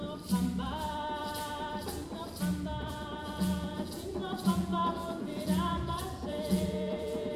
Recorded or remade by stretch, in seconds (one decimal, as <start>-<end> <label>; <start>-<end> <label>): 0.0-2.9 recorded; 2.9-7.4 remade